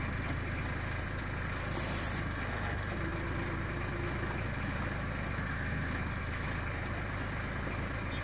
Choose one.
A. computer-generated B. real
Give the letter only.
B